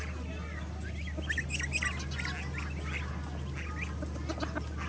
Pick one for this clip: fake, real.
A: real